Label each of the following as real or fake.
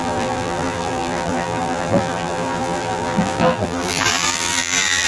fake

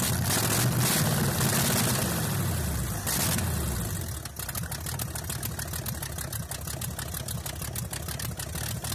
real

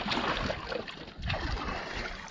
real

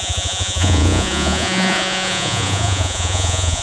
fake